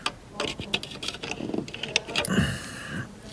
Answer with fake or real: real